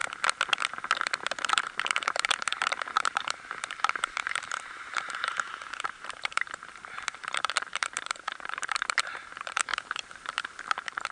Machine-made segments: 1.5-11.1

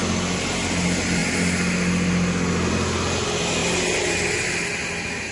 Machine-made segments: 3.6-4.5

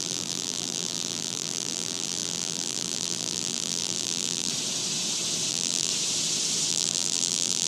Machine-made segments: 0.0-4.5; 5.5-5.9; 6.7-7.7

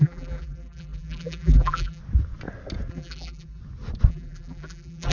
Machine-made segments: 0.0-2.0; 2.9-3.6; 4.1-5.1

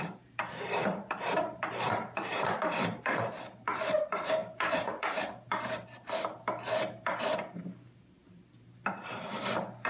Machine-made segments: 0.0-9.9

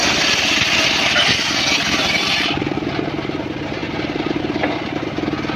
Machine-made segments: 0.0-1.3; 2.0-3.0; 3.8-4.4

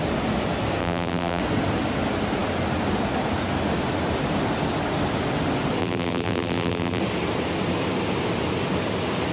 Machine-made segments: 0.8-1.4; 5.8-7.0

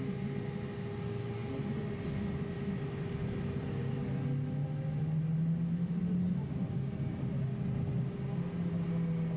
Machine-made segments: none